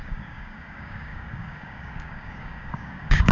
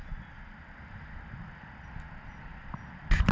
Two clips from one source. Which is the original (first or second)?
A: second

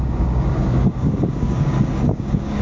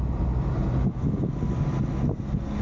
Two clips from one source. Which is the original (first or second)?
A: second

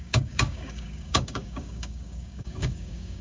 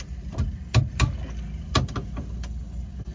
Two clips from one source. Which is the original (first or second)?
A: second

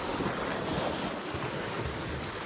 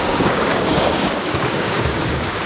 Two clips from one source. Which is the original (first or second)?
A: first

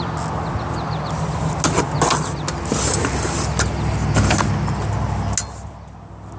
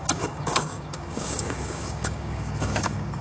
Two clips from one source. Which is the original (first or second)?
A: first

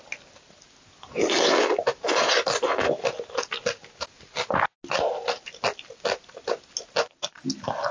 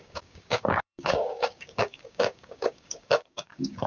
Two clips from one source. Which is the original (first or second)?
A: first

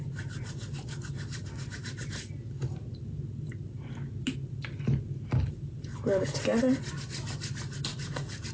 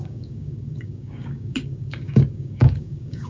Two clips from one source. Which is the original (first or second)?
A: first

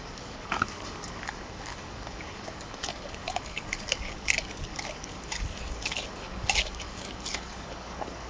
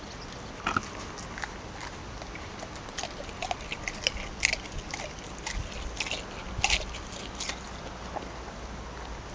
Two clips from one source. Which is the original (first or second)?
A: second